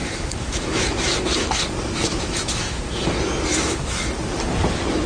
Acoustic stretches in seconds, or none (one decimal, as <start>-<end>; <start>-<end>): 1.6-2.1; 2.8-3.5; 4.0-5.1